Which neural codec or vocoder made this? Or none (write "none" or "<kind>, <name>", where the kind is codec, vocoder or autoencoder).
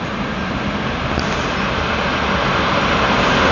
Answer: none